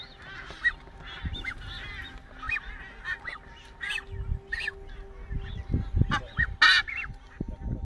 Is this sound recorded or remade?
recorded